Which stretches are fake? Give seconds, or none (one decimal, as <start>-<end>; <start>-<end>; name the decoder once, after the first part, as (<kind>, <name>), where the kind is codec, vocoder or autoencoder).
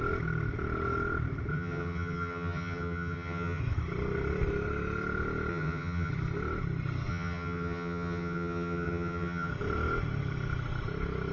1.5-3.6 (vocoder, HiFi-GAN); 5.5-6.1; 7.1-9.5